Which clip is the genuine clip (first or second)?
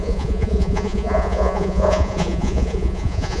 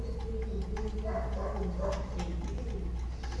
second